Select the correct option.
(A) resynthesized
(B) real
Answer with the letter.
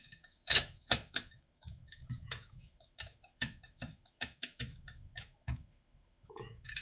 A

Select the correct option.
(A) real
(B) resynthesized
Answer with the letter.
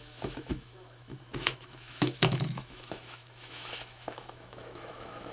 B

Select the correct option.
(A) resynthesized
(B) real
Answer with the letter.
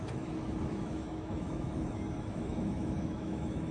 A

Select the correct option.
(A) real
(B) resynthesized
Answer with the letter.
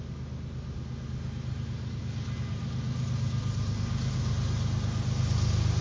A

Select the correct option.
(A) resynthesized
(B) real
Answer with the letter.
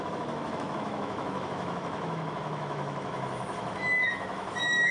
A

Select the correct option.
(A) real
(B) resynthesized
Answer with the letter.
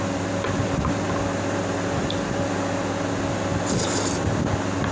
A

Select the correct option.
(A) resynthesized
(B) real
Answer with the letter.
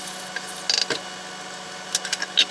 B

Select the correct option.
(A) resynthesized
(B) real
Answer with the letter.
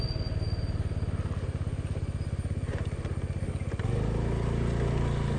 B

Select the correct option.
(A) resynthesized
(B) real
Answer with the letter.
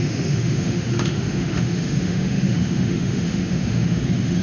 A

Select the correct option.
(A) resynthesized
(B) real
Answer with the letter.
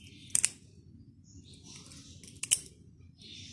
B